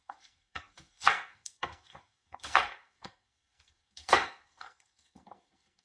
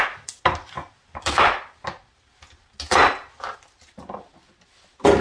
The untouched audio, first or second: second